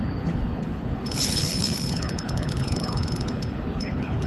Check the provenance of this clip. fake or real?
fake